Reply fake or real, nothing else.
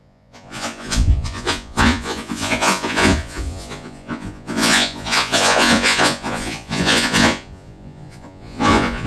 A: fake